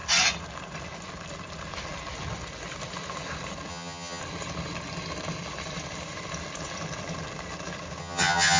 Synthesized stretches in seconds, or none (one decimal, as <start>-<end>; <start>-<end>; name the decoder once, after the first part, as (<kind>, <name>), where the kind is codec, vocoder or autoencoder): 3.7-4.2 (vocoder, HiFi-GAN); 8.0-8.6